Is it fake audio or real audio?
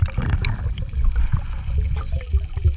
real